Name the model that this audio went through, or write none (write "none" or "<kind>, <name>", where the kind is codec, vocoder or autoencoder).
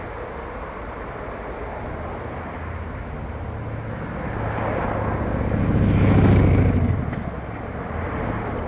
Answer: none